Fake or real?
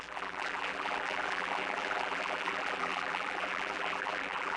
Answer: fake